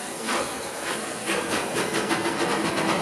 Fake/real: fake